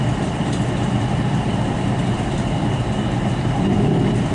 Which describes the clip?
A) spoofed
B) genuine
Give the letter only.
A